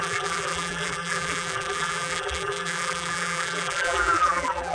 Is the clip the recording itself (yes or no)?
no